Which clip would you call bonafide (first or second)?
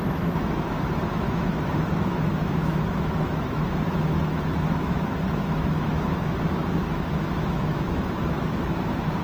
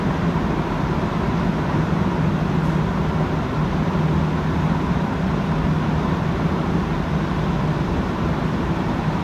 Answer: second